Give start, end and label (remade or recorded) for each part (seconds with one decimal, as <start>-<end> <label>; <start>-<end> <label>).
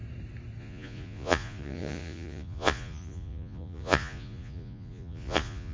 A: 0.0-0.6 recorded; 0.6-5.7 remade